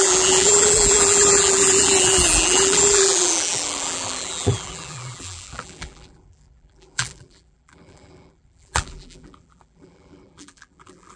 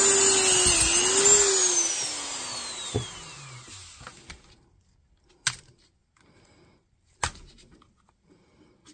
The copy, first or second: first